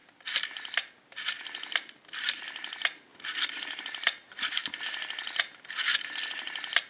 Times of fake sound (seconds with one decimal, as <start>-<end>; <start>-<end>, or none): 1.3-3.1; 3.8-6.9